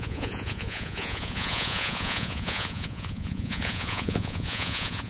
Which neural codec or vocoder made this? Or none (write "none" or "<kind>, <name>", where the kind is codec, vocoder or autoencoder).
vocoder, Vocos